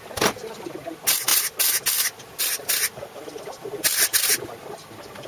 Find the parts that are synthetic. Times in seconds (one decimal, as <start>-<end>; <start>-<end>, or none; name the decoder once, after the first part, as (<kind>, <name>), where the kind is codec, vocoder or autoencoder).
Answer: none